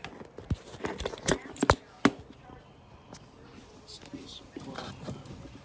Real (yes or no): yes